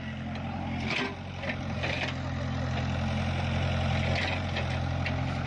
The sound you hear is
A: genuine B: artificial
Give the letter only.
A